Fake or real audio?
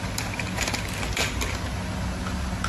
real